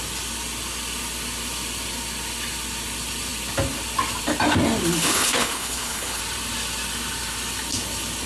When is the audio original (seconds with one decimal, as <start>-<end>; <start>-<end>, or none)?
0.0-5.0; 6.2-8.3